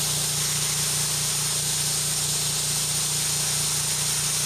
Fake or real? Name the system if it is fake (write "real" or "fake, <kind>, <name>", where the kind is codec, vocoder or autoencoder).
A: real